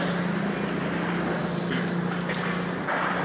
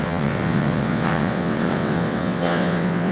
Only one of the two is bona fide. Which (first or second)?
first